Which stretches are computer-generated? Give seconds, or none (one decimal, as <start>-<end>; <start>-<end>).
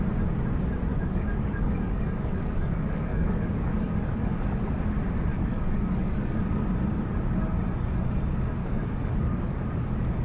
0.9-4.6; 5.3-6.6; 8.6-9.6